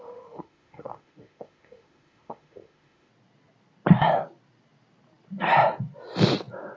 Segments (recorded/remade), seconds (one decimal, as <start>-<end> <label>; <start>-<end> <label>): 0.0-3.1 remade; 3.1-6.8 recorded